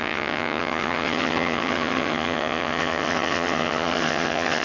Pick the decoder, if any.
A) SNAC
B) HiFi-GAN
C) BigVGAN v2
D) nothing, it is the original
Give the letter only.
B